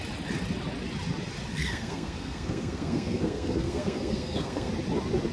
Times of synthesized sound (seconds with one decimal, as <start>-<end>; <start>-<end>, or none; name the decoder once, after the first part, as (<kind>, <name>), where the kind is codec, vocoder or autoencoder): 1.5-4.7 (codec, SNAC)